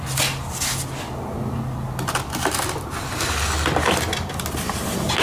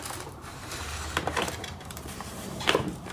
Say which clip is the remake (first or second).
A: second